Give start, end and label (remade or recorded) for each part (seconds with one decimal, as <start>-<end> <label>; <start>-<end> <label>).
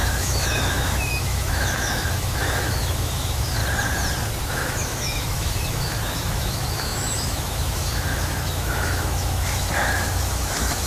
0.0-3.6 remade; 3.6-4.5 recorded; 4.5-10.9 remade